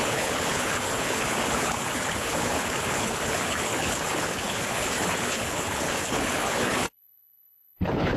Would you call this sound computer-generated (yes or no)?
yes